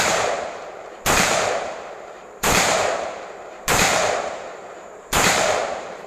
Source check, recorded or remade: remade